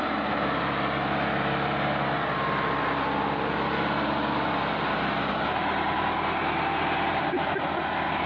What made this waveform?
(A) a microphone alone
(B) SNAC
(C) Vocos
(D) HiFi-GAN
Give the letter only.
A